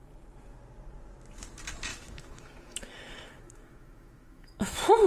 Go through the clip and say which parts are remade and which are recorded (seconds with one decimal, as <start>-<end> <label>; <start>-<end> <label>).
0.0-1.9 recorded; 1.9-5.1 remade